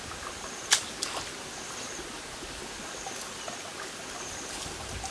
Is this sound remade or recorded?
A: recorded